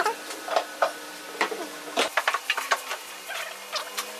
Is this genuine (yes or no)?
yes